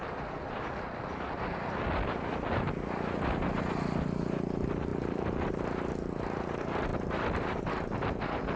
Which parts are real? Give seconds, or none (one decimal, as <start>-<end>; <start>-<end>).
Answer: 0.0-8.6